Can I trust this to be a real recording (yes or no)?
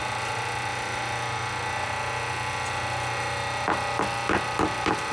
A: yes